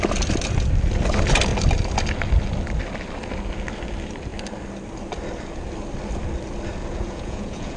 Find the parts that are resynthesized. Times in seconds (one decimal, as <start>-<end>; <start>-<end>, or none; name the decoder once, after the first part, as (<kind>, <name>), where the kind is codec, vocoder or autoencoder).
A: 6.8-7.8 (vocoder, Vocos)